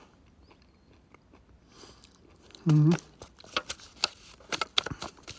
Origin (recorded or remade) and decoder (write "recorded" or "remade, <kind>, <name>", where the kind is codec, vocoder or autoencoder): recorded